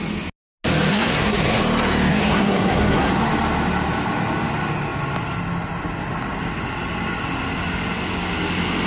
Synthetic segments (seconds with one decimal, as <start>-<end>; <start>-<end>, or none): 0.9-1.6; 2.1-3.1